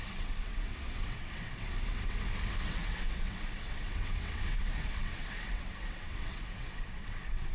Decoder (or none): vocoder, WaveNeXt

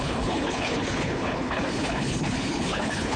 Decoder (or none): codec, HILCodec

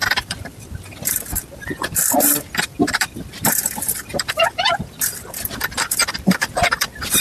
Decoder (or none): vocoder, BigVGAN v2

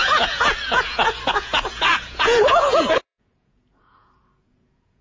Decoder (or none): vocoder, Vocos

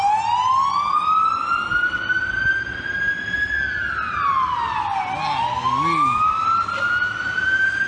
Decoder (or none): none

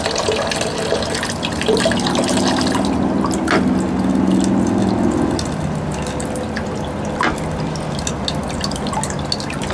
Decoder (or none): none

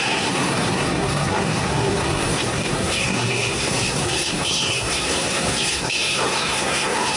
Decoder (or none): codec, SNAC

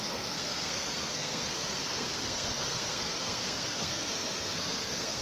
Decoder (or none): codec, SNAC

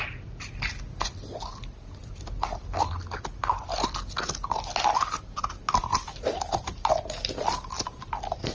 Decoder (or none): none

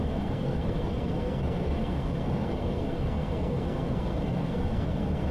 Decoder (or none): codec, SNAC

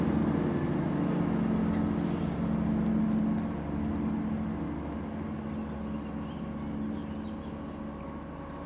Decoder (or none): none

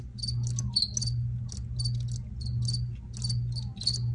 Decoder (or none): none